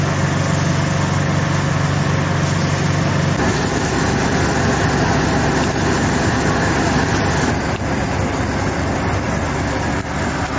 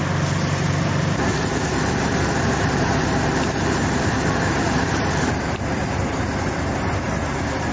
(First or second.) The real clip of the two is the first